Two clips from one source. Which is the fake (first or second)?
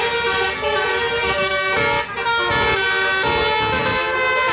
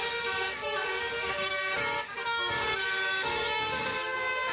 second